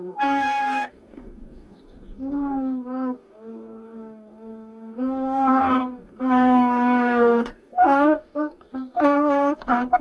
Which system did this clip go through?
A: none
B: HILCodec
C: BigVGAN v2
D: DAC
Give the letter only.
D